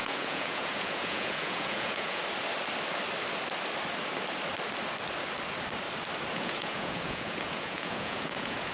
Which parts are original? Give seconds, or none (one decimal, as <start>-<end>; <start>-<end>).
2.2-6.3